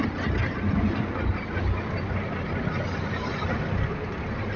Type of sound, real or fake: real